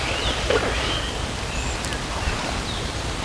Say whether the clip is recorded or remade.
recorded